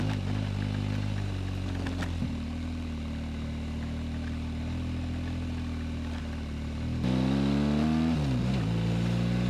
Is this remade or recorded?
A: recorded